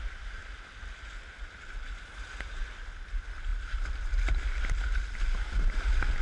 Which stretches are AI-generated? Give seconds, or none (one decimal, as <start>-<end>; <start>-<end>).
none

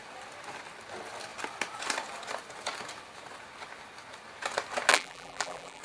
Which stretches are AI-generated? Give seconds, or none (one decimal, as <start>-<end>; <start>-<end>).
4.9-5.8

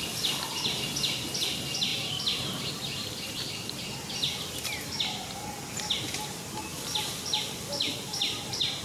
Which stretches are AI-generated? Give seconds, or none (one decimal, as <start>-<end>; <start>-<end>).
1.9-2.7

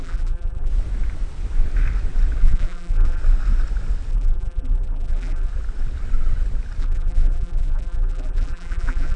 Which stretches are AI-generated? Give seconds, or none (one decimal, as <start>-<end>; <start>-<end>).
0.0-0.7; 2.4-3.2; 4.1-5.5; 6.8-9.2

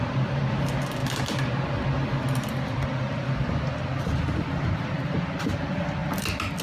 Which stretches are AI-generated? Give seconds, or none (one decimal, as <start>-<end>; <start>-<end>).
none

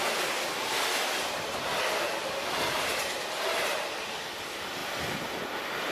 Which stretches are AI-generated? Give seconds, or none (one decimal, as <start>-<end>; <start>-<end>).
none